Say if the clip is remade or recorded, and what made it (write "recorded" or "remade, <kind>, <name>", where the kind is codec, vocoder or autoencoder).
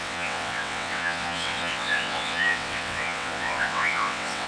remade, vocoder, WaveNeXt